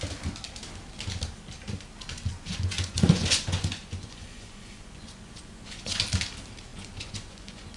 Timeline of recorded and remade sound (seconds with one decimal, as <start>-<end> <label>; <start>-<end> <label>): 0.0-2.3 recorded; 2.3-6.0 remade; 6.0-6.7 recorded; 6.7-7.8 remade